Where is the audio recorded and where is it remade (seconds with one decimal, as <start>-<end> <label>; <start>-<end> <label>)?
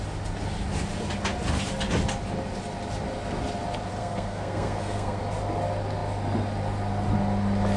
0.0-4.0 recorded; 4.0-5.2 remade; 5.2-7.8 recorded